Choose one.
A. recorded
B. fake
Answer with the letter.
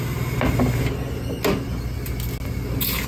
A